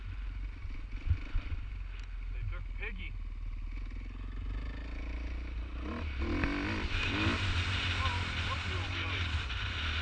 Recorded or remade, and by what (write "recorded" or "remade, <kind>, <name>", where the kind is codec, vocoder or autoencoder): recorded